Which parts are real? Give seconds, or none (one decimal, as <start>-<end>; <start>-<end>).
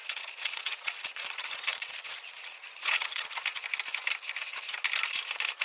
3.4-5.6